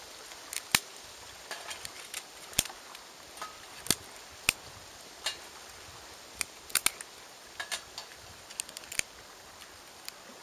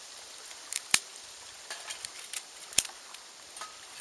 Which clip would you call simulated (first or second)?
second